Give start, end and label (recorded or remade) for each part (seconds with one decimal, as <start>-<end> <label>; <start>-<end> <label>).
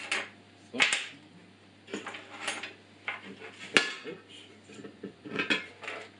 0.0-4.9 recorded; 4.9-5.7 remade; 5.7-6.2 recorded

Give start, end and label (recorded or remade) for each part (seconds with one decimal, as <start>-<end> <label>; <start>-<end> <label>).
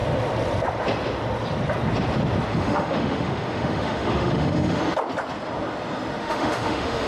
0.0-2.5 recorded; 2.5-4.8 remade; 4.8-6.2 recorded; 6.2-7.1 remade